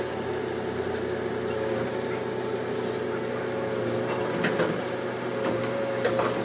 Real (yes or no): yes